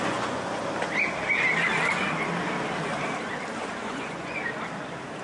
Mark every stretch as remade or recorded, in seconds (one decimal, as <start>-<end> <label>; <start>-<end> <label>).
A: 0.0-0.6 remade; 0.6-3.7 recorded; 3.7-4.4 remade; 4.4-5.2 recorded